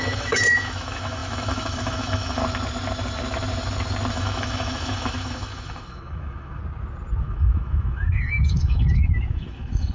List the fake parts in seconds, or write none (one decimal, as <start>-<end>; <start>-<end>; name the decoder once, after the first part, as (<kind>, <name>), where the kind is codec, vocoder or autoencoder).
0.0-2.4 (autoencoder, DAC-VAE); 4.1-6.6; 7.2-9.9